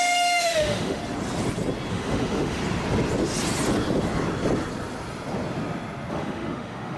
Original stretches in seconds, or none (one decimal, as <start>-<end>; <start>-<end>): 1.0-1.9; 2.6-6.1